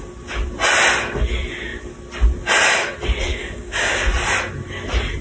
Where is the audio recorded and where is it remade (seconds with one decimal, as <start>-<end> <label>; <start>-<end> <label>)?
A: 0.0-3.3 recorded; 3.3-4.1 remade; 4.1-5.2 recorded